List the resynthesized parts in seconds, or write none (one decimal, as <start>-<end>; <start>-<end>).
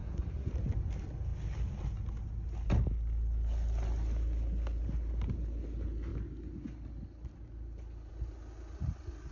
0.0-0.5